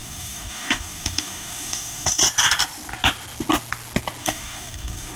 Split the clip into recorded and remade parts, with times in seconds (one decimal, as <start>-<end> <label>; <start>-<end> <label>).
0.0-2.2 remade; 2.2-4.2 recorded; 4.2-5.2 remade